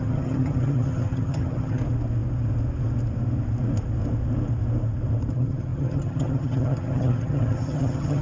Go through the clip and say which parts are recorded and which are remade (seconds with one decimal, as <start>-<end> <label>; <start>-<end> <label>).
0.0-1.8 remade; 1.8-5.3 recorded; 5.3-8.2 remade